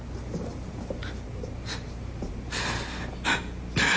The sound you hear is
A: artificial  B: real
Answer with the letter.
B